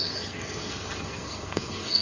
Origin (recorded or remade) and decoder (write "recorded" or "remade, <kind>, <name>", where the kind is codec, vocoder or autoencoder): remade, codec, SNAC